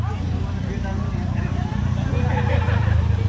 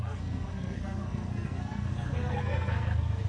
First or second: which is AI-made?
second